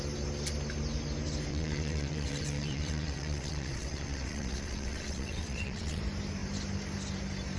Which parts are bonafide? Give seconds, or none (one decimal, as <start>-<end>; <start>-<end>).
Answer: 0.0-1.5; 6.0-7.6